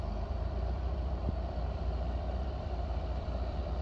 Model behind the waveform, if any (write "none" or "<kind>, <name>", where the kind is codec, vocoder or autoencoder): vocoder, BigVGAN v2